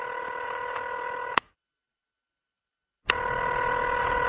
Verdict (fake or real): real